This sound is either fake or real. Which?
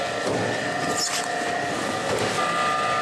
real